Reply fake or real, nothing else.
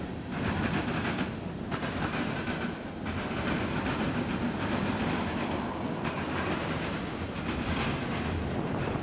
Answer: real